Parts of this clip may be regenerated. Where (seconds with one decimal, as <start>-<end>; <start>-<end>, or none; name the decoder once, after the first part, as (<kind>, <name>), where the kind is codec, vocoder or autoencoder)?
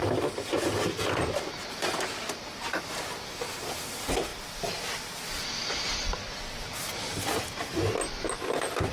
none